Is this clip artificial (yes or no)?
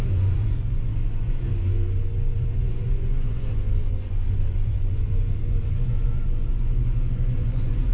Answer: yes